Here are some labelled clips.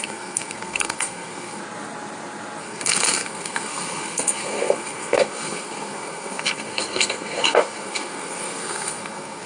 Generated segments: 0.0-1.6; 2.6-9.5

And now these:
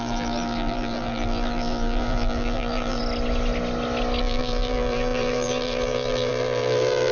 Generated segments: 0.0-3.0; 4.2-7.1

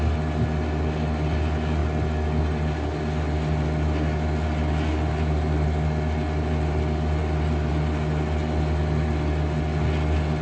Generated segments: none

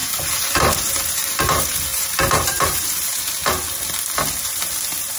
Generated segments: 0.0-3.4; 4.4-5.2

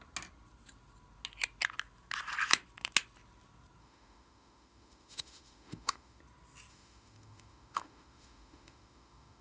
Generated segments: 3.8-6.2; 6.7-9.4

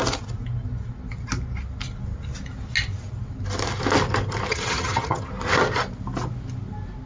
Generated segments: 4.5-5.3